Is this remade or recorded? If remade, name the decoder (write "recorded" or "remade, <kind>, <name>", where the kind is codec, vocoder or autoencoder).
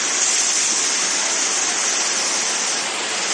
recorded